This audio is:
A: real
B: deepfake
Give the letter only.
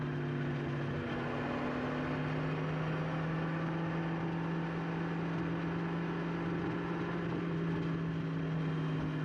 A